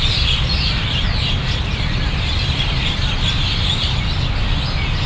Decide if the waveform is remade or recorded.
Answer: recorded